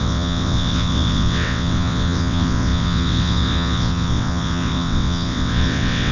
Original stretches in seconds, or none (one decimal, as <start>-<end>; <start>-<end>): none